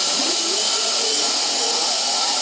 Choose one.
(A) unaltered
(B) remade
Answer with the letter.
B